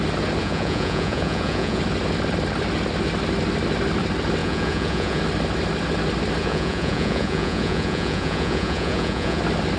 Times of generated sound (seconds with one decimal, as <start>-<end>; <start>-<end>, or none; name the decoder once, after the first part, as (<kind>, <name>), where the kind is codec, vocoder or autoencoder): 0.4-1.8 (vocoder, Vocos); 4.4-5.2; 6.4-9.4